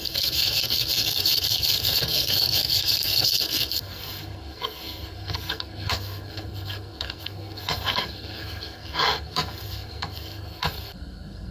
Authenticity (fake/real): fake